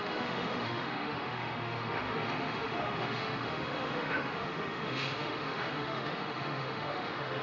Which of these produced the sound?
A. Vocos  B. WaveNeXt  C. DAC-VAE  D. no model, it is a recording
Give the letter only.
C